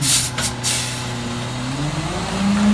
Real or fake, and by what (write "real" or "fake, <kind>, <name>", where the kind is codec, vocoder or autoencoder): real